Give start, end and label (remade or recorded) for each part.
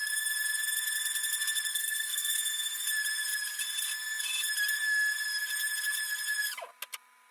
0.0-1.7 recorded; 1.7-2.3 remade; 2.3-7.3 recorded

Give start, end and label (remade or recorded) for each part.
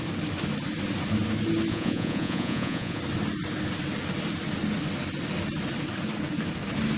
0.0-1.7 recorded; 1.7-3.0 remade; 3.0-7.0 recorded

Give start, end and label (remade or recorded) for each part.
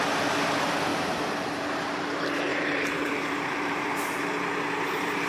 0.0-0.9 recorded; 0.9-2.0 remade; 2.0-2.5 recorded; 2.5-4.2 remade; 4.2-5.3 recorded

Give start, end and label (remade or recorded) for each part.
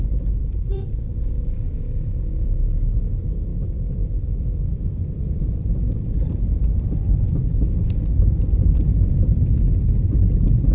0.0-0.4 recorded; 0.4-1.2 remade; 1.2-3.5 recorded; 3.5-6.0 remade; 6.0-10.7 recorded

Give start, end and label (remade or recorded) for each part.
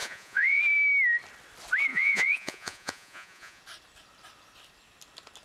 0.0-0.6 remade; 0.6-1.9 recorded; 1.9-3.6 remade; 3.6-5.4 recorded